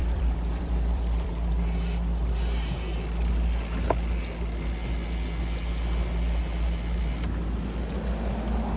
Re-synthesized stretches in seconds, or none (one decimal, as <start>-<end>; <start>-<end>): 0.0-1.3